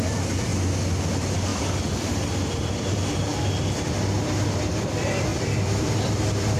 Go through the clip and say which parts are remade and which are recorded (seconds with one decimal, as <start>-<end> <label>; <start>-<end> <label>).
0.0-0.5 remade; 0.5-1.1 recorded; 1.1-1.5 remade; 1.5-2.4 recorded; 2.4-6.6 remade